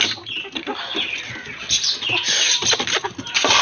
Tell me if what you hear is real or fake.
real